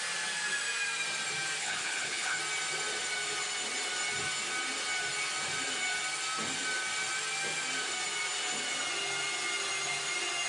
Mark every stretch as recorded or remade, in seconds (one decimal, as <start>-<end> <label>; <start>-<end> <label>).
0.0-1.6 recorded; 1.6-2.4 remade; 2.4-10.5 recorded